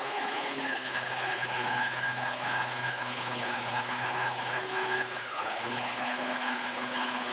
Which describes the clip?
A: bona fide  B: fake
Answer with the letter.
B